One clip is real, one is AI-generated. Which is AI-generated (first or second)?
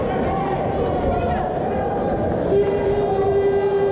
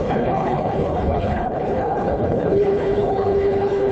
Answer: second